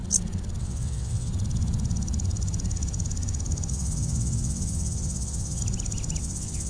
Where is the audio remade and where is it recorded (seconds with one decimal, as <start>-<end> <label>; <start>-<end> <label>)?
0.0-0.6 recorded; 0.6-1.3 remade; 1.3-3.7 recorded; 3.7-5.6 remade; 5.6-6.2 recorded; 6.2-6.7 remade